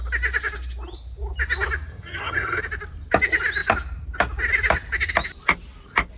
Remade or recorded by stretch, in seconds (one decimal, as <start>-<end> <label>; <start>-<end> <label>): 0.0-1.9 recorded; 1.9-2.6 remade; 2.6-6.2 recorded